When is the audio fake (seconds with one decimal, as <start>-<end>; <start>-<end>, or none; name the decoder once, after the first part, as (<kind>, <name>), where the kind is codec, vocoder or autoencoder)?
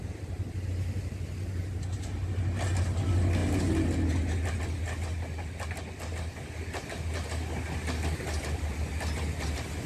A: none